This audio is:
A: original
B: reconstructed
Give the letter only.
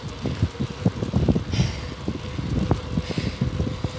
A